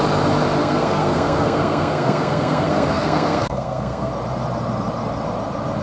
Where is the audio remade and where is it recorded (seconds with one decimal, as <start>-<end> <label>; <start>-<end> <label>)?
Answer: 0.0-0.6 recorded; 0.6-4.1 remade; 4.1-5.8 recorded